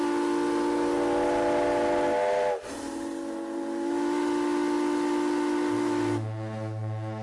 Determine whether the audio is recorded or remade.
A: recorded